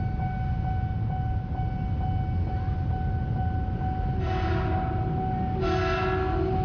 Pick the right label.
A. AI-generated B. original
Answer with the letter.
B